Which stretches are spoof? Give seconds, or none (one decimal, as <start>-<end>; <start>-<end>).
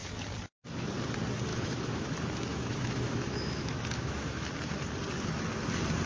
1.5-2.1; 2.5-4.5